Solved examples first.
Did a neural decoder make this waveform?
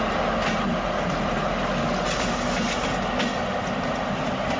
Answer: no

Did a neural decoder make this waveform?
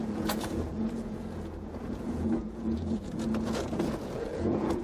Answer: yes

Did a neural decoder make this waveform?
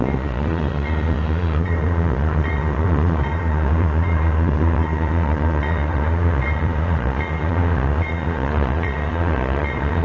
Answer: yes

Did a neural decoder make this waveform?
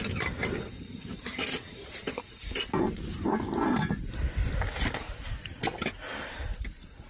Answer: no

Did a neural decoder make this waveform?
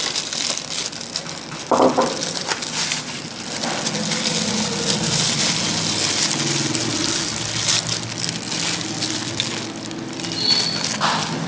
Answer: no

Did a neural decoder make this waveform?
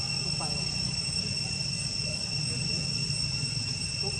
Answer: no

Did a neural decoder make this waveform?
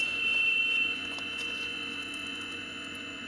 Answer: yes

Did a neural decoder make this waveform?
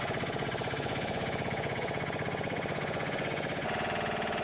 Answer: yes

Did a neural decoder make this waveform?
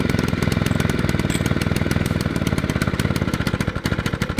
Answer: no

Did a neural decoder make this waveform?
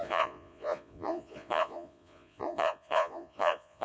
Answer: yes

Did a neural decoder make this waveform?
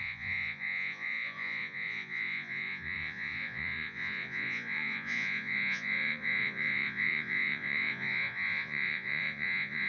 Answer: yes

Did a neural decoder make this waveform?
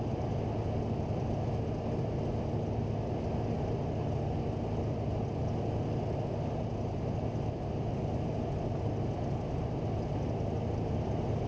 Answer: no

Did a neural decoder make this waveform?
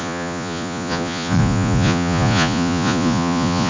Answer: yes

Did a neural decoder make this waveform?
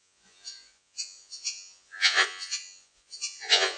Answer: yes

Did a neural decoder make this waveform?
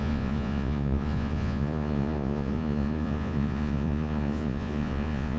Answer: yes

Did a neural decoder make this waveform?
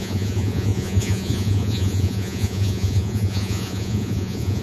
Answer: yes